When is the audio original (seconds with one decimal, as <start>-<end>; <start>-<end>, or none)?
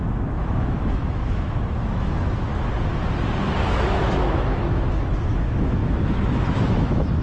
2.5-3.4